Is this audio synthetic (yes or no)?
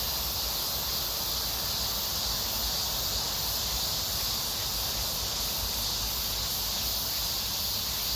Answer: no